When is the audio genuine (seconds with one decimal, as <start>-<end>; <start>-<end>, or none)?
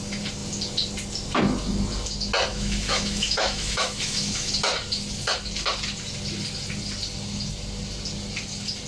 0.0-2.5; 4.5-8.9